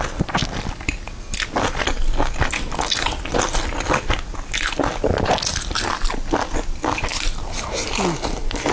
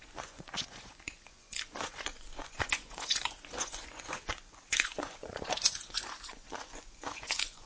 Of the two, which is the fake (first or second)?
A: second